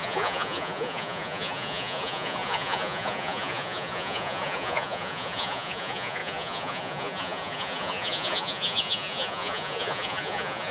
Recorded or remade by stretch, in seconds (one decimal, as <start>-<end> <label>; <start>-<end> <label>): 0.0-10.7 remade